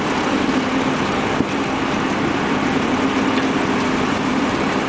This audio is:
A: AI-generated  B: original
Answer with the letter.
B